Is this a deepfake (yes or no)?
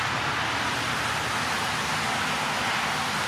no